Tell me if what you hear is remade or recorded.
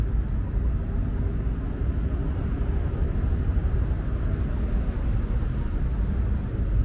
recorded